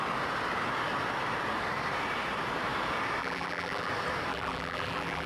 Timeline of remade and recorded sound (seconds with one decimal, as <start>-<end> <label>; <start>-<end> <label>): 0.0-3.2 recorded; 3.2-3.9 remade; 3.9-4.3 recorded; 4.3-5.3 remade